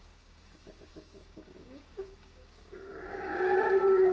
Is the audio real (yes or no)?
no